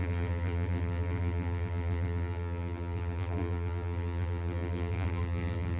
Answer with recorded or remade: remade